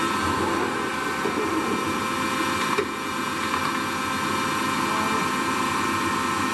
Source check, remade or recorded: recorded